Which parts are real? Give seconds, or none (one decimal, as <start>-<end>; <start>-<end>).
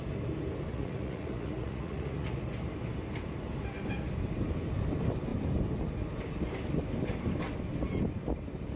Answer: 0.0-0.7; 2.4-8.8